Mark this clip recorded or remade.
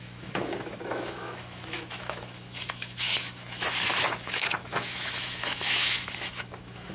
remade